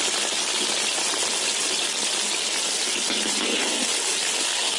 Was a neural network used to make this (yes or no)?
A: no